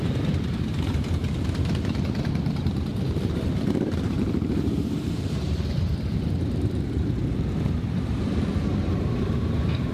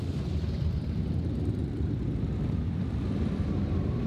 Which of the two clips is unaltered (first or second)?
second